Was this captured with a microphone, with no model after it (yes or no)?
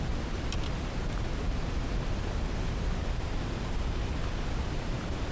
yes